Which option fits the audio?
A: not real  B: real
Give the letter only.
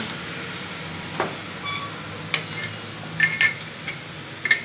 B